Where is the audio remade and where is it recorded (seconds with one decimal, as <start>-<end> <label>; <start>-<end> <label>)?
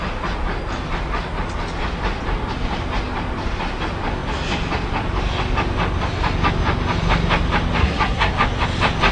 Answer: 0.0-7.8 recorded; 7.8-8.3 remade; 8.3-9.1 recorded